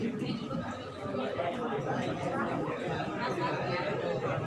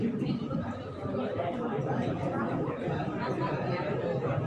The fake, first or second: second